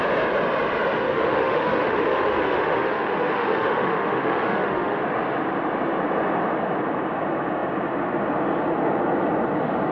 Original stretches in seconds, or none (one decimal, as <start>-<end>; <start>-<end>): 0.0-1.0; 5.0-9.9